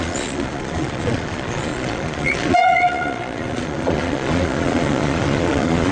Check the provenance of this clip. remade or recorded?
remade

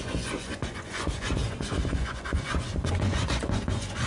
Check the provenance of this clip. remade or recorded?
remade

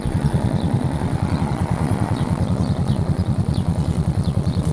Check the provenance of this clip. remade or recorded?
remade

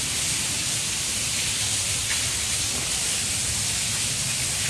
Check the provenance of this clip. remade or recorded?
recorded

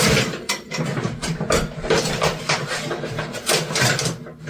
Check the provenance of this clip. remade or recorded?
recorded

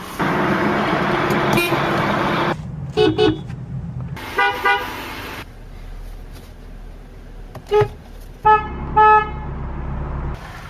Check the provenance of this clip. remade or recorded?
recorded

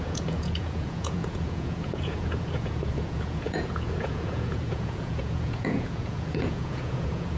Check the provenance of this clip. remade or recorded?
remade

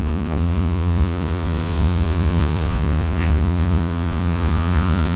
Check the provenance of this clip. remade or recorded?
remade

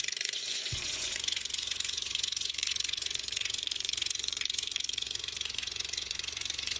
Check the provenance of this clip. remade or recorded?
remade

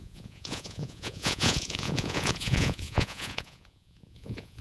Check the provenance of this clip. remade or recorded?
remade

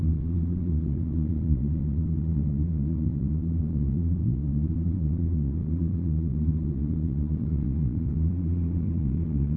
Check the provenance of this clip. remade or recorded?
remade